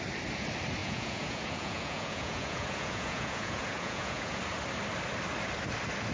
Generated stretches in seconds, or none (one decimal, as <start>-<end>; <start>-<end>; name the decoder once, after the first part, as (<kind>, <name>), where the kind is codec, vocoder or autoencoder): 0.8-4.4 (vocoder, Vocos)